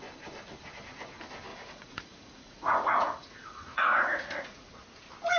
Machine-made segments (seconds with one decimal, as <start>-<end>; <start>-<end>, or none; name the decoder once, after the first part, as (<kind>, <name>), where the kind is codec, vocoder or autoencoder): 1.5-4.7 (vocoder, Vocos)